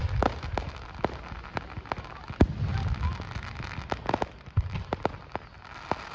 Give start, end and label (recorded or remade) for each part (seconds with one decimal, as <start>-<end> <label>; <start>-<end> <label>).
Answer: 0.0-6.1 recorded